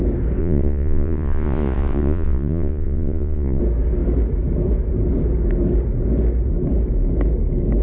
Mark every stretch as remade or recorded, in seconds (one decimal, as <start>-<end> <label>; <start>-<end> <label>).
0.0-0.4 recorded; 0.4-3.6 remade; 3.6-7.8 recorded